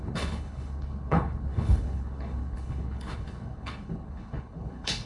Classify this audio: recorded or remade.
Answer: remade